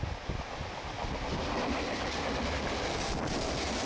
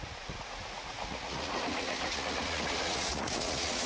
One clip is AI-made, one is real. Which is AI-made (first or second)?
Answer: second